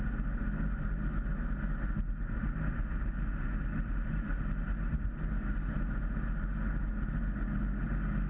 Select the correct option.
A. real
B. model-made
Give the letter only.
A